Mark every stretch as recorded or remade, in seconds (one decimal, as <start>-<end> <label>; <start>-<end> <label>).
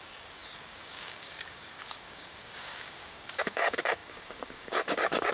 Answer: 0.0-5.3 remade